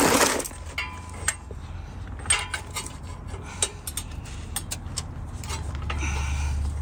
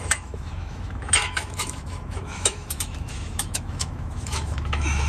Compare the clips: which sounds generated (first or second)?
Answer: second